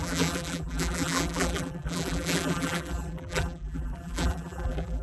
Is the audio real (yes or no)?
no